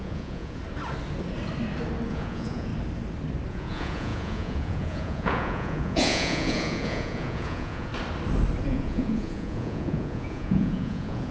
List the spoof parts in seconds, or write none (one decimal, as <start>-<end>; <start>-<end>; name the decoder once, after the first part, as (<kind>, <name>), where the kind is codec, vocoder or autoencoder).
0.0-0.6 (vocoder, Vocos); 2.1-2.7; 3.5-7.9; 8.7-11.3